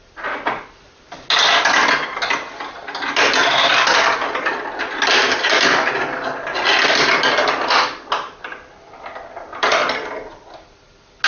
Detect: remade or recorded recorded